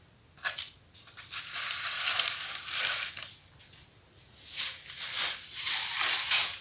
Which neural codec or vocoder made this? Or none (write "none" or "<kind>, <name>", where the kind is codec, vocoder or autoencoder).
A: none